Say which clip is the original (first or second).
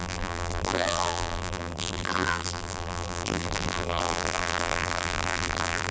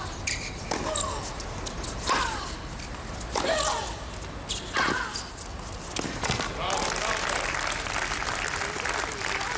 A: second